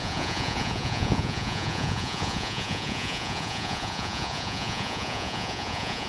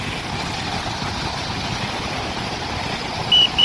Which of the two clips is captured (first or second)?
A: second